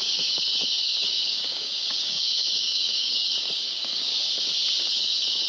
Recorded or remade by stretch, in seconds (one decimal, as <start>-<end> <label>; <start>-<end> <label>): 0.0-4.1 remade; 4.1-4.8 recorded; 4.8-5.5 remade

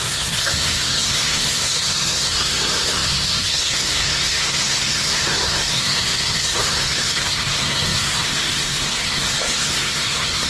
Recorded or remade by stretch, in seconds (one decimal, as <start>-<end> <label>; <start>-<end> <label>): 0.0-10.5 remade